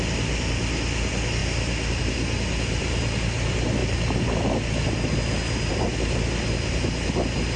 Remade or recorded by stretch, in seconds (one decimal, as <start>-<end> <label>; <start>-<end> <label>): 0.0-7.6 recorded